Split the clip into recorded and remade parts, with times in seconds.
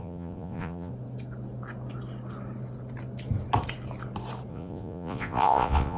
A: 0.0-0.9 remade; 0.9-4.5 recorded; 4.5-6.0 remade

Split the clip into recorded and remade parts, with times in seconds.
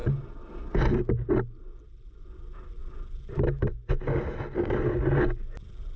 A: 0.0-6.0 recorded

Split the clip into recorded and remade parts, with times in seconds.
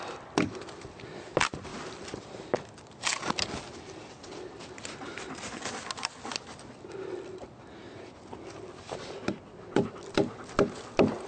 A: 0.0-11.3 recorded